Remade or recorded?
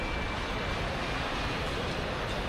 recorded